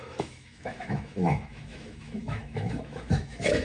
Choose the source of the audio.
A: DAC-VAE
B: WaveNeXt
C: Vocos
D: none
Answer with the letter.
A